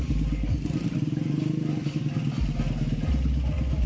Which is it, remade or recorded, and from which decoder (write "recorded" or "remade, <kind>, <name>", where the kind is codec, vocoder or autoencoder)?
recorded